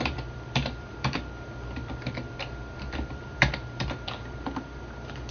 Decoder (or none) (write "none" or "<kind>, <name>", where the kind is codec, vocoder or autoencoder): vocoder, BigVGAN v2